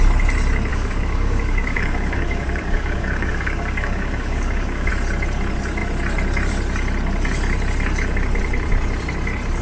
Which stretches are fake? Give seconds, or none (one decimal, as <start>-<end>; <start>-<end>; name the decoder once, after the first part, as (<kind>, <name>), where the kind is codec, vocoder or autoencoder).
0.7-4.9 (codec, DAC)